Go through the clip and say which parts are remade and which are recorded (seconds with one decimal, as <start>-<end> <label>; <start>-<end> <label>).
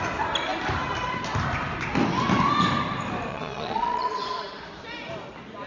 0.0-3.3 recorded; 3.3-4.6 remade; 4.6-5.7 recorded